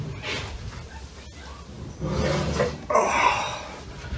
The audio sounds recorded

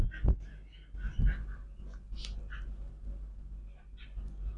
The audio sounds recorded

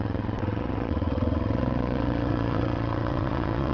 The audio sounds remade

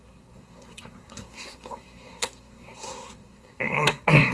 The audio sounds remade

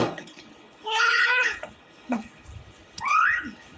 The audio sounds remade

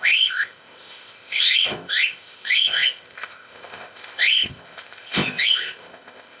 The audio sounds remade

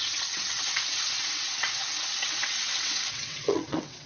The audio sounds remade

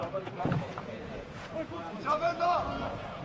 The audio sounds remade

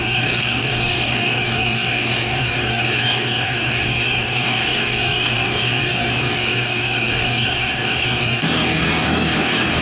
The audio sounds remade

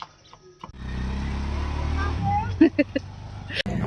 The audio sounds recorded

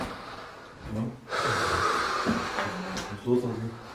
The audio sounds recorded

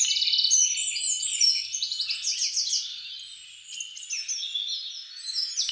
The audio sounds recorded